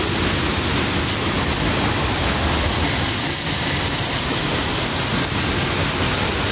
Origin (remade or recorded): recorded